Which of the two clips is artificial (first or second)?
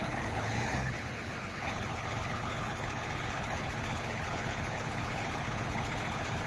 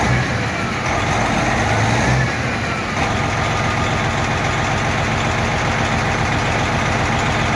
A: first